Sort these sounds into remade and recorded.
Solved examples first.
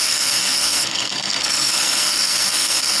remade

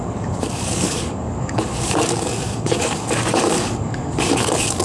remade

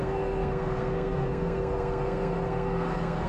remade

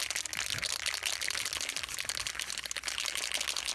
recorded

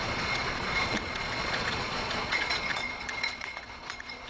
remade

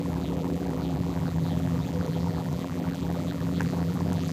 remade